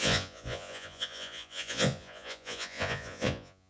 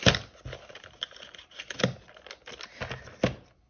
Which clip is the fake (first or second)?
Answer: first